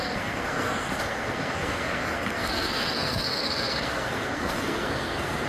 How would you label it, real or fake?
fake